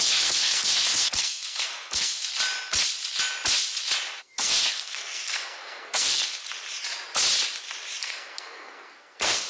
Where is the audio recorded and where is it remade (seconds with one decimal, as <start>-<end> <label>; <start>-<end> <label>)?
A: 0.0-2.3 remade; 2.3-4.2 recorded; 4.2-6.4 remade; 6.4-8.0 recorded; 8.0-9.5 remade